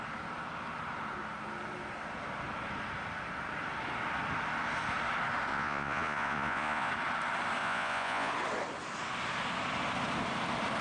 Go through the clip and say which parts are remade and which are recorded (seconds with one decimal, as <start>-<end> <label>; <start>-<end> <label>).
0.0-5.5 recorded; 5.5-6.9 remade; 6.9-7.6 recorded; 7.6-8.3 remade; 8.3-10.8 recorded